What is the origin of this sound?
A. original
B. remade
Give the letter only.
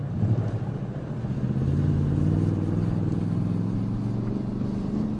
A